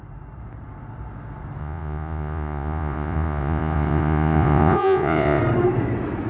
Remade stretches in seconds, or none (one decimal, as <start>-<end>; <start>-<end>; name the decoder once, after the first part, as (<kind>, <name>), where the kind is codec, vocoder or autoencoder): 1.6-5.4 (vocoder, Vocos)